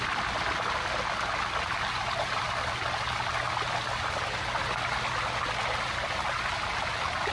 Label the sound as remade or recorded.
recorded